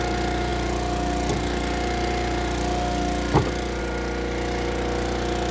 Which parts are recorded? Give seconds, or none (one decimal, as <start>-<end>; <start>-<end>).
0.0-5.5